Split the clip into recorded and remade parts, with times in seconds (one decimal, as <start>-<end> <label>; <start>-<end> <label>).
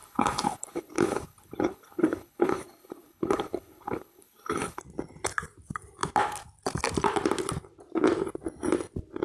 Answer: 0.0-4.8 remade; 4.8-9.2 recorded